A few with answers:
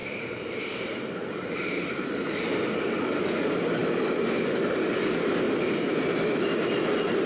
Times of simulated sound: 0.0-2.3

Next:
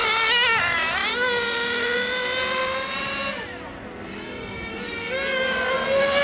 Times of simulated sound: none

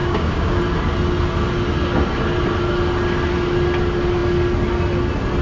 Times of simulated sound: 0.0-0.6

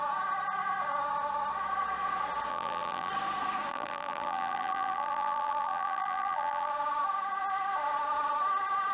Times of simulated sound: 2.5-3.1; 3.7-6.7

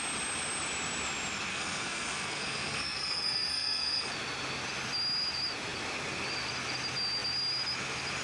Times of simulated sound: 1.5-4.1

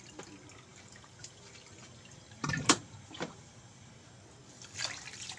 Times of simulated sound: 0.7-3.9

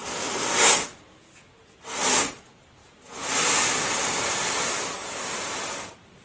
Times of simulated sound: none

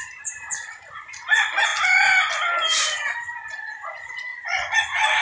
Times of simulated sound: none